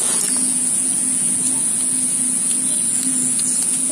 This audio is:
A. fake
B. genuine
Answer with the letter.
A